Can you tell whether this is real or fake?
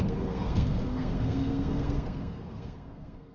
fake